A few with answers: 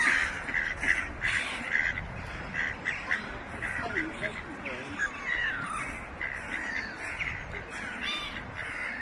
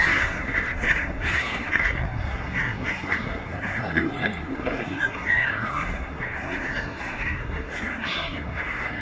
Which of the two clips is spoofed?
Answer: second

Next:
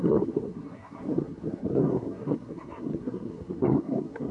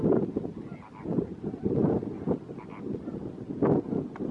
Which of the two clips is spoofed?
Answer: first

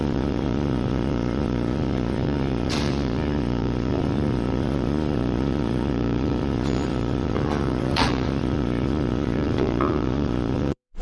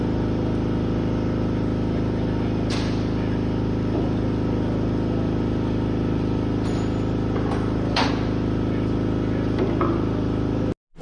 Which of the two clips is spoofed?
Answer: first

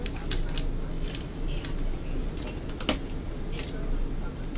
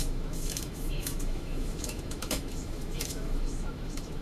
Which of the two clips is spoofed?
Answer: second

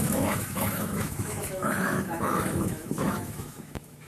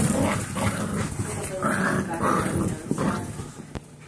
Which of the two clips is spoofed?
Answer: first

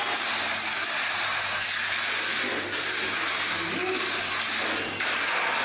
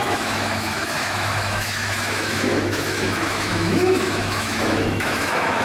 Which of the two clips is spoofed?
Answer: second